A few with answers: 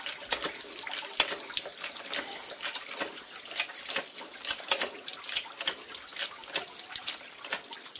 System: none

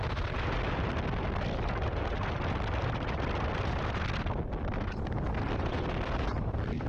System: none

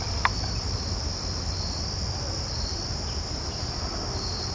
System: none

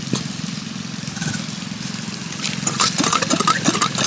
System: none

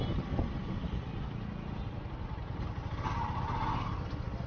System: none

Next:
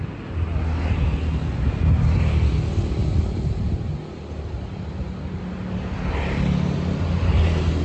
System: none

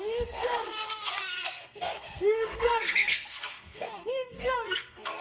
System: codec, SNAC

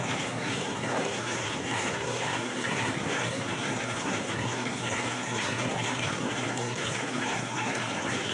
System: codec, SNAC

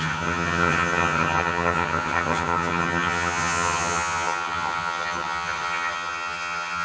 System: vocoder, HiFi-GAN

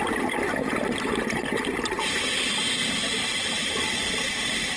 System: none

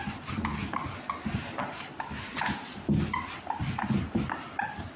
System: none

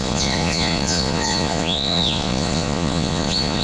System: vocoder, Vocos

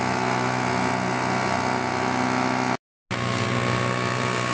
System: none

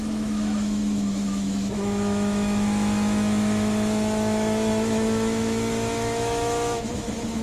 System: autoencoder, DAC-VAE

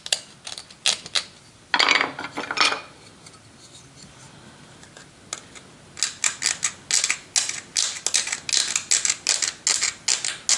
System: none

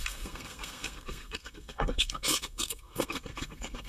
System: codec, SNAC